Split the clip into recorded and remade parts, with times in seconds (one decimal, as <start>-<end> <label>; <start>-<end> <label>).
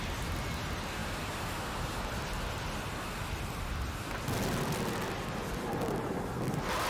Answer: 0.0-6.9 recorded